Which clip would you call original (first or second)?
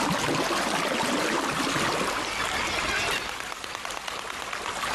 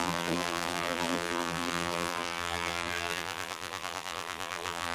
first